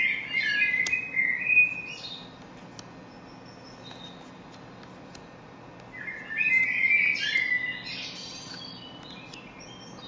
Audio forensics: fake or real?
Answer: real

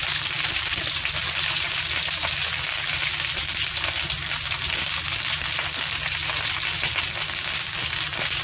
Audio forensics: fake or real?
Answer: real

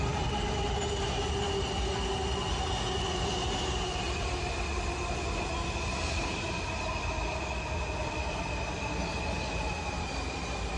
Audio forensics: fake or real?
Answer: real